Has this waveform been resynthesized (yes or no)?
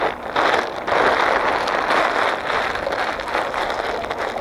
no